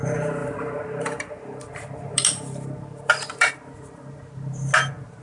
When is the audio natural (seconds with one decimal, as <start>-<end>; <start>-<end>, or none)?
0.0-0.4; 3.5-5.2